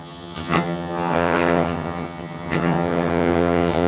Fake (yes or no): yes